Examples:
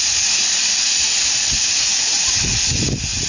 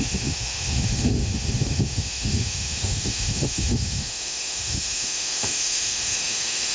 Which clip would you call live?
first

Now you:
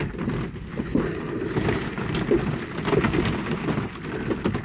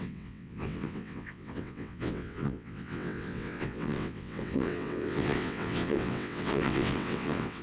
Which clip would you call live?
first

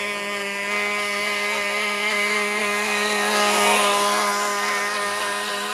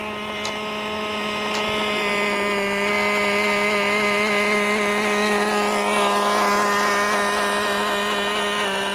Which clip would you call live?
second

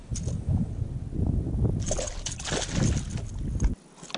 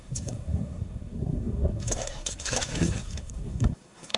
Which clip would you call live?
first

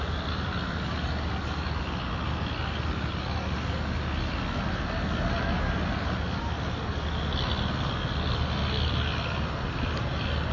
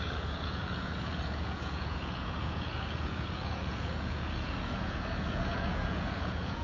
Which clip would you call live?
first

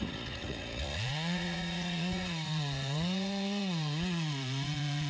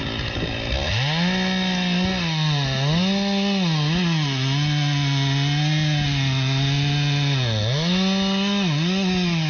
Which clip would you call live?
second